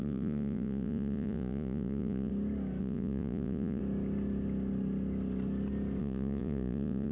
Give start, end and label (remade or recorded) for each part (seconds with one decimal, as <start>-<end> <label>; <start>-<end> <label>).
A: 0.0-2.3 remade; 2.3-2.8 recorded; 2.8-3.8 remade; 3.8-6.0 recorded; 6.0-7.1 remade

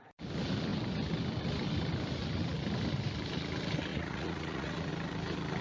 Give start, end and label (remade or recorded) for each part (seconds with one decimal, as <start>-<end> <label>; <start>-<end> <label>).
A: 0.0-3.9 recorded; 3.9-4.9 remade; 4.9-5.6 recorded

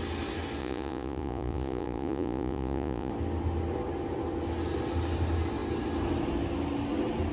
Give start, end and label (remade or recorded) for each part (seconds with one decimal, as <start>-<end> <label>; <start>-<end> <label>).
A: 0.0-0.6 recorded; 0.6-3.1 remade; 3.1-7.3 recorded

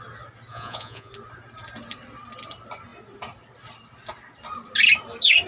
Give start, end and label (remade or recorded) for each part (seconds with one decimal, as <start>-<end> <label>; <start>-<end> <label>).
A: 0.0-0.5 recorded; 0.5-1.1 remade; 1.1-5.5 recorded